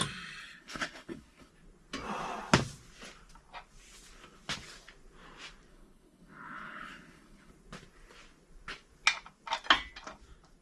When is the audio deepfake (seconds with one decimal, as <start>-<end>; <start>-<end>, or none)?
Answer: 0.4-1.5; 5.7-7.5

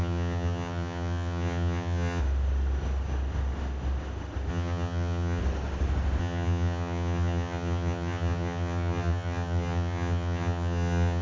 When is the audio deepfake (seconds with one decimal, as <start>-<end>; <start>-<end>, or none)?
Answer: 0.0-2.2; 4.5-5.4; 6.2-11.2